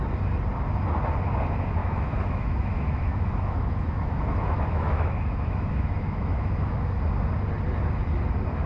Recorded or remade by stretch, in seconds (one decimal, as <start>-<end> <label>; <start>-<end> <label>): 0.0-1.8 recorded; 1.8-7.0 remade; 7.0-8.7 recorded